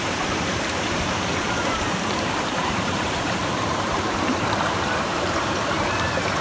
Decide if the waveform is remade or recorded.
remade